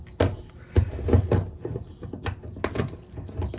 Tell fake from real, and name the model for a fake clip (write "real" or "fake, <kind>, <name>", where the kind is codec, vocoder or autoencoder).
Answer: real